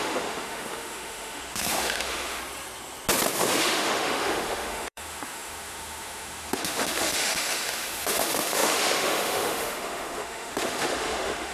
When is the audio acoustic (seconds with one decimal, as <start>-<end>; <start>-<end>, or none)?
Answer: 2.4-3.6